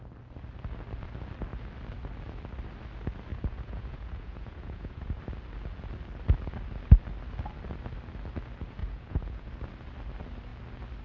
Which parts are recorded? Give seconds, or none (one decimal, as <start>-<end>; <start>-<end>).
0.0-3.3; 5.2-8.8; 9.5-11.0